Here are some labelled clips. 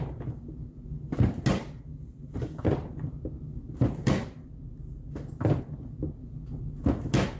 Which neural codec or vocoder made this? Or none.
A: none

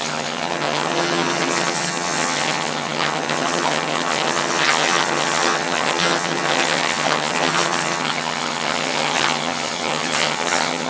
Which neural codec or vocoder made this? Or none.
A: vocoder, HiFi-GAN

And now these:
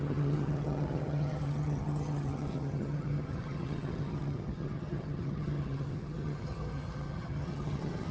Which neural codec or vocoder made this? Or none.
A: vocoder, HiFi-GAN